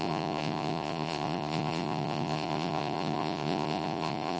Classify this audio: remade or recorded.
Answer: remade